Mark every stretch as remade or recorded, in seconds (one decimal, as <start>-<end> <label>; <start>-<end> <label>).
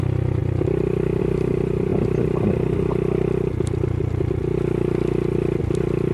0.0-0.4 recorded; 0.4-1.2 remade; 1.2-6.1 recorded